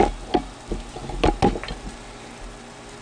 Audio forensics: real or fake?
real